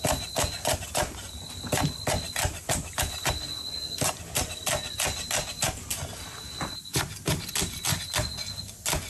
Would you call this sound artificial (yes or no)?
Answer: no